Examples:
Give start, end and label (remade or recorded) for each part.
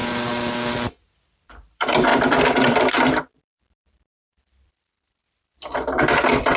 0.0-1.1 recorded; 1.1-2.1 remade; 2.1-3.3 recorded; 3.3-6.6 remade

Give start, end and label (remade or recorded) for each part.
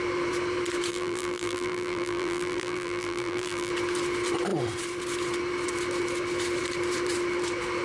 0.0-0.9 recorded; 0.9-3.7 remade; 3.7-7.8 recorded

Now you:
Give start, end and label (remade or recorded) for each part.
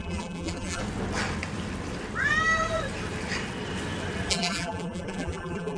0.0-0.8 remade; 0.8-4.3 recorded; 4.3-5.8 remade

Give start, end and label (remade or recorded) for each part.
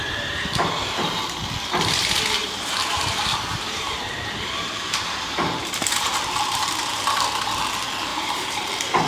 0.0-2.4 recorded; 2.4-7.6 remade; 7.6-8.1 recorded; 8.1-8.7 remade; 8.7-9.1 recorded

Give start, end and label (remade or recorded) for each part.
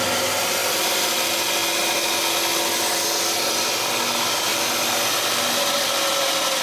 0.0-0.6 recorded; 0.6-1.2 remade; 1.2-4.5 recorded; 4.5-6.6 remade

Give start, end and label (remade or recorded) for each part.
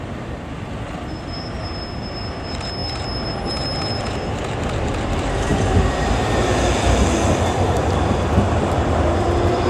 0.0-9.7 remade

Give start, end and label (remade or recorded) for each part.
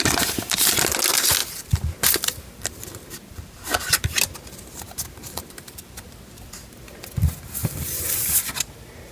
0.0-1.4 recorded; 1.4-6.1 remade; 6.1-7.6 recorded; 7.6-8.5 remade; 8.5-9.1 recorded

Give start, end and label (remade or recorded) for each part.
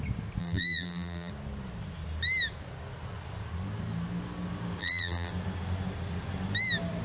0.0-0.4 recorded; 0.4-1.3 remade; 1.3-4.8 recorded; 4.8-5.3 remade; 5.3-7.0 recorded